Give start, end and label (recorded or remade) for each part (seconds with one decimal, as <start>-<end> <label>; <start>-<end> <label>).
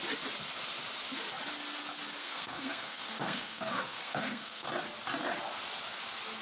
0.0-2.2 recorded; 2.2-4.7 remade; 4.7-6.4 recorded